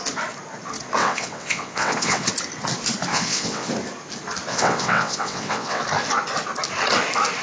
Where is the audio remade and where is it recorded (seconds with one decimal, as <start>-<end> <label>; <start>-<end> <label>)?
0.0-1.0 recorded; 1.0-2.3 remade; 2.3-3.1 recorded; 3.1-3.7 remade; 3.7-4.5 recorded; 4.5-5.8 remade; 5.8-7.4 recorded